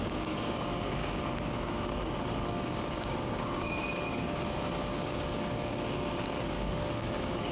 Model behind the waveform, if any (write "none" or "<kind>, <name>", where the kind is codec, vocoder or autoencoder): codec, DAC